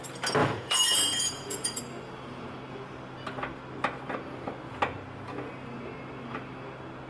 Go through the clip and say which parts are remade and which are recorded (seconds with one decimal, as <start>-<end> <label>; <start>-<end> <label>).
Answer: 0.0-0.4 recorded; 0.4-1.8 remade; 1.8-7.1 recorded